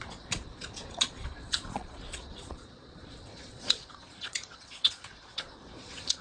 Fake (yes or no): yes